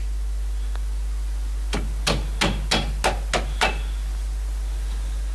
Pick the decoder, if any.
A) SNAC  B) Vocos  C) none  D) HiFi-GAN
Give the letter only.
C